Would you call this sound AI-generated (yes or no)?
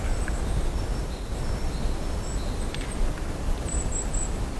no